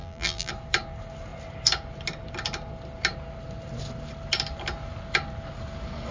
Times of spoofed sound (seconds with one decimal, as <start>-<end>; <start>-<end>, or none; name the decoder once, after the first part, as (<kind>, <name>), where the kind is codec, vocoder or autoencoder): 0.0-0.5 (vocoder, BigVGAN v2)